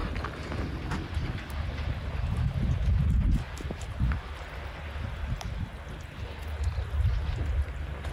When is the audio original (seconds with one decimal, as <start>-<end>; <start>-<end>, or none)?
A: 0.0-8.1